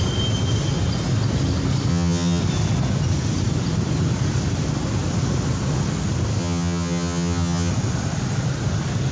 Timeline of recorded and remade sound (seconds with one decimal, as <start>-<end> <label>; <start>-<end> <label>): 0.0-1.9 recorded; 1.9-2.4 remade; 2.4-6.4 recorded; 6.4-7.7 remade; 7.7-9.1 recorded